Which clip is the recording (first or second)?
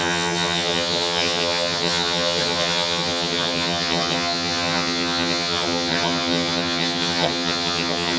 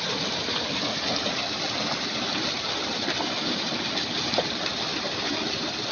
second